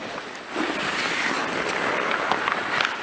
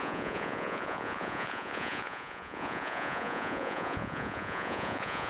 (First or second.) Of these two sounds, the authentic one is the first